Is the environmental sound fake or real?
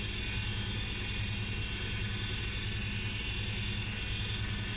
real